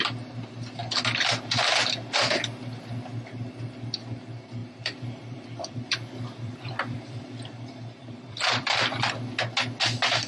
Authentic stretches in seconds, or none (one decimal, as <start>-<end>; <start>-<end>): 0.0-4.6; 9.1-10.3

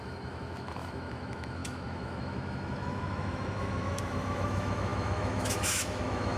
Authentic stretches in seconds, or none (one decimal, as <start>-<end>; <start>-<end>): none

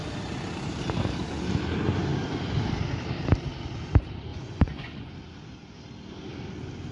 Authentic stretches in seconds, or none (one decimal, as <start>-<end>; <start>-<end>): 0.0-4.3; 5.1-6.9

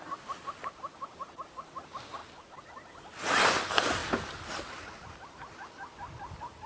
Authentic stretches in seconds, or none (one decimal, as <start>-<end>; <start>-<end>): 0.0-6.7

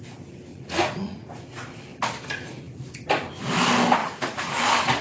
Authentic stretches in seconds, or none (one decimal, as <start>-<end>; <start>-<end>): 0.0-0.5; 1.3-4.0; 4.5-5.0